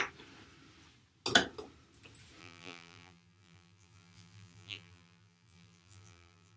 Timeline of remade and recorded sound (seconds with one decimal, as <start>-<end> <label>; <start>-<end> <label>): 0.0-2.4 recorded; 2.4-6.6 remade